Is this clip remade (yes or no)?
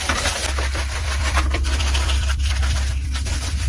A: yes